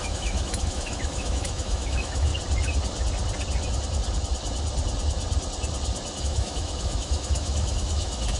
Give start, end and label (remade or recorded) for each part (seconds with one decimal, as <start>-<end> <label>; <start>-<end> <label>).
0.0-2.3 remade; 2.3-6.2 recorded; 6.2-8.4 remade